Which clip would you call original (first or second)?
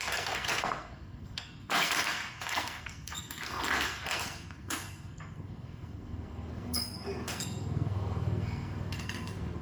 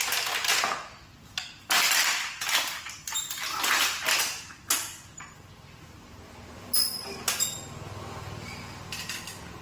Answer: second